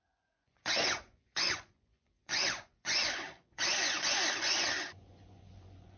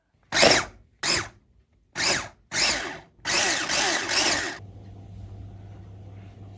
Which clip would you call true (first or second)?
second